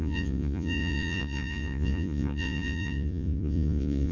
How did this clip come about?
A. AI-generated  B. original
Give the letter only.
A